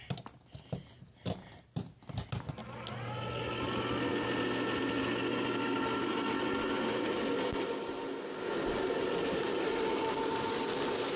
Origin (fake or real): real